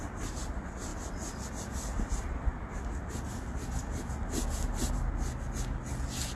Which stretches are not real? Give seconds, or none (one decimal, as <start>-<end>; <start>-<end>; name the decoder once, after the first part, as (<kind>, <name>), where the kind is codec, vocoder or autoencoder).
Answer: none